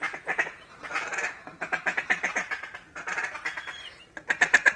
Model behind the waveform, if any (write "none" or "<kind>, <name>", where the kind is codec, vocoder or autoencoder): vocoder, BigVGAN v2